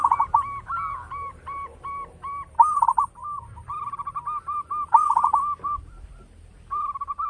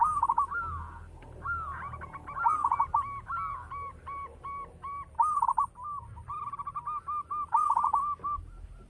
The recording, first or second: second